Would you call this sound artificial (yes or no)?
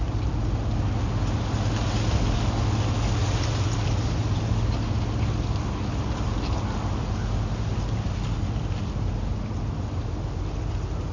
no